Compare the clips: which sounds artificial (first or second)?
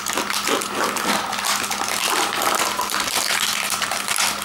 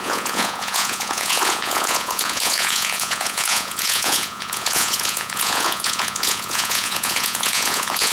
second